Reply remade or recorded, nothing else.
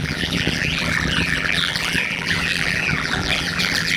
remade